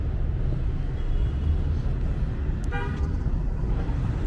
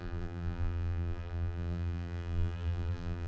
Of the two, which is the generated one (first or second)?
second